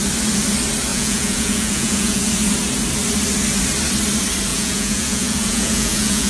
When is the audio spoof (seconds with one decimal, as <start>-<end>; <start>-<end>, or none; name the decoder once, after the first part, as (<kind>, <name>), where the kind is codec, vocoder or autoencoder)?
0.9-2.3 (vocoder, Vocos); 4.5-6.3